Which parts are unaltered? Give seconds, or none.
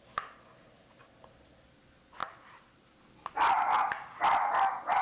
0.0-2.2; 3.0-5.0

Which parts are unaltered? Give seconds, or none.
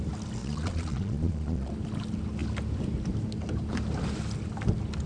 0.0-0.4; 1.7-5.1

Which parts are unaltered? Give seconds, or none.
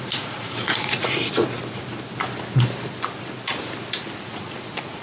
1.2-4.2